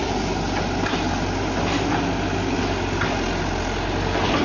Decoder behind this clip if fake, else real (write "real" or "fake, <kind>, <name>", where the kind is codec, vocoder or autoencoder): real